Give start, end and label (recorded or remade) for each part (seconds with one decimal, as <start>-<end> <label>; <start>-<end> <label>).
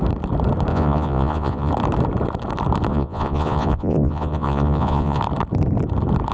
0.0-0.7 recorded; 0.7-1.7 remade; 1.7-2.9 recorded; 2.9-5.2 remade; 5.2-6.3 recorded